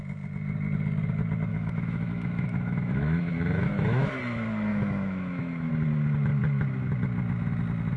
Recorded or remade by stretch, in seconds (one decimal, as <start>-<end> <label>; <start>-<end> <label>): 0.0-1.5 recorded; 1.5-4.2 remade; 4.2-4.7 recorded; 4.7-5.7 remade; 5.7-8.0 recorded